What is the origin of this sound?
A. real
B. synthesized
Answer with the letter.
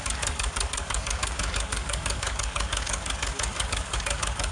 B